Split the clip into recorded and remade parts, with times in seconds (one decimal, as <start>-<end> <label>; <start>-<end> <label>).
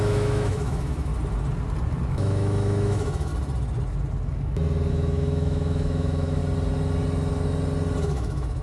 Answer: 0.0-1.1 remade; 1.1-2.1 recorded; 2.1-3.3 remade; 3.3-4.9 recorded; 4.9-6.4 remade; 6.4-8.0 recorded; 8.0-8.6 remade